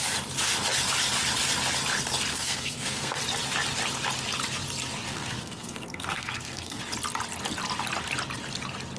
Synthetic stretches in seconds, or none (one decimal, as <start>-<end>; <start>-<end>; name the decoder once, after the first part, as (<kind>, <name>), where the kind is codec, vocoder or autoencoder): 2.3-3.2 (codec, SNAC); 5.1-6.8